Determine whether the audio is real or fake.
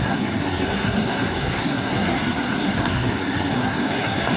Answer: fake